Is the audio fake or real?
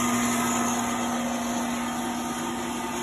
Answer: real